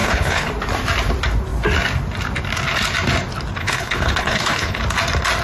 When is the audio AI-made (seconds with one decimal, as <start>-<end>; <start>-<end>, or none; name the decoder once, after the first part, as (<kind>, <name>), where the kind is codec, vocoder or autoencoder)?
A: 0.0-0.5 (codec, HILCodec); 3.6-4.8